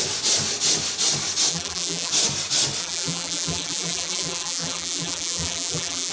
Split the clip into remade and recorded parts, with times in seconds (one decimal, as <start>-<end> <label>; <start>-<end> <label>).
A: 0.0-1.5 recorded; 1.5-2.1 remade; 2.1-2.8 recorded; 2.8-6.1 remade